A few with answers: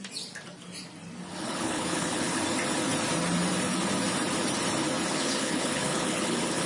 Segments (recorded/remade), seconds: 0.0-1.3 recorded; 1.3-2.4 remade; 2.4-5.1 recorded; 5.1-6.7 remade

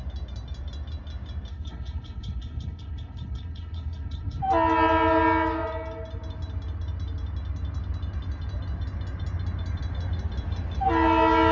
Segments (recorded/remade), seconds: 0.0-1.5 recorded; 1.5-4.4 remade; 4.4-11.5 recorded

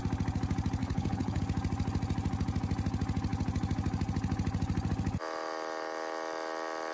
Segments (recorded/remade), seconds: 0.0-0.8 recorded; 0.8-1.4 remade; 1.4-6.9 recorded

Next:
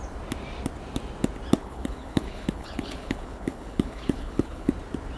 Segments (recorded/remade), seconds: 0.0-1.6 recorded; 1.6-4.7 remade; 4.7-5.2 recorded